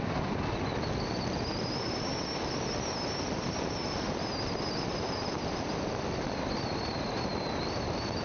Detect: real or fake real